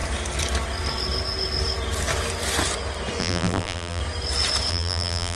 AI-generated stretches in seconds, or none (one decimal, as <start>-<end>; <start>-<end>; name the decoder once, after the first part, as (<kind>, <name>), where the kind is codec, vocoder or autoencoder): 3.2-4.0 (vocoder, BigVGAN v2); 4.7-5.3